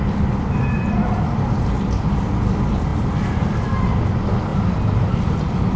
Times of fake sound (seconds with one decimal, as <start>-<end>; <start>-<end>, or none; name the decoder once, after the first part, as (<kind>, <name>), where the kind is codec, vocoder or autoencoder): none